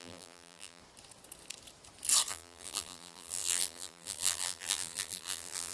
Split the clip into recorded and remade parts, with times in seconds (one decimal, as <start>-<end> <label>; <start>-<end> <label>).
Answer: 0.0-0.8 remade; 0.8-2.3 recorded; 2.3-5.7 remade